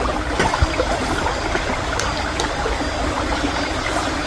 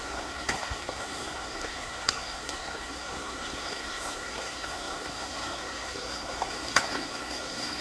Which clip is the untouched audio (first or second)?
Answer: first